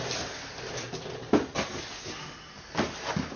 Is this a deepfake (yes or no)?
no